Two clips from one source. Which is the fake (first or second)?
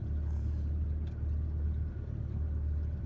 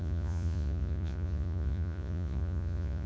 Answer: second